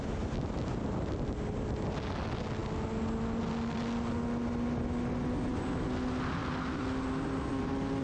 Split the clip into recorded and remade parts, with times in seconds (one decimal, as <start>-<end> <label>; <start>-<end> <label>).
0.0-8.0 recorded